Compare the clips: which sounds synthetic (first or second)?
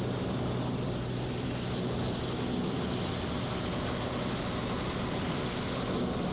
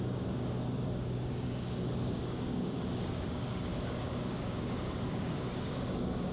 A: second